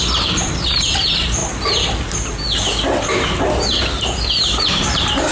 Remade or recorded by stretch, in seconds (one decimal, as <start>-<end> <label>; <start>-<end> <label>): 0.0-1.4 remade; 1.4-4.6 recorded; 4.6-5.3 remade